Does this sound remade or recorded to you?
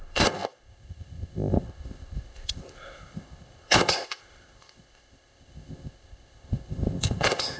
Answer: remade